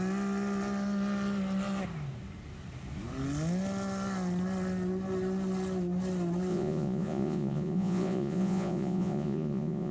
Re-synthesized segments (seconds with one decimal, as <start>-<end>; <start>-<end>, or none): 6.5-9.9